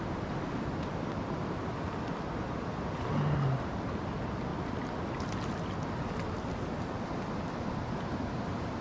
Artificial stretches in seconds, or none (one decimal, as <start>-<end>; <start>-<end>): none